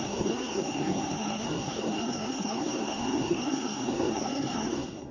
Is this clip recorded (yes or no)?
no